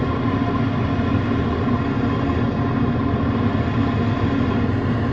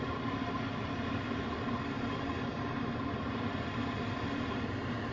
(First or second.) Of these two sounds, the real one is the first